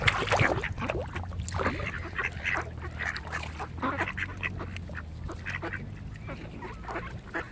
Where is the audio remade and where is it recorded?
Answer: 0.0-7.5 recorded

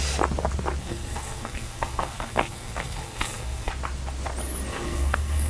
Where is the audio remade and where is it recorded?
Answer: 0.0-0.8 recorded; 0.8-3.7 remade; 3.7-4.7 recorded; 4.7-5.5 remade